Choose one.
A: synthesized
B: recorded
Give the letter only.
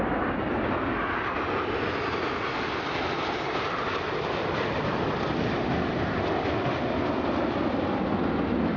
B